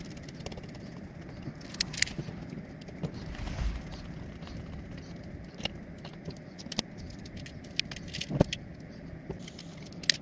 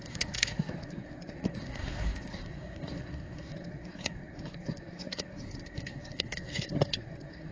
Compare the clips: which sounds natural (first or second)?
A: first